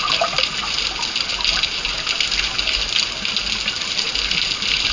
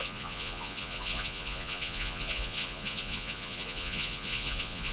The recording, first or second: first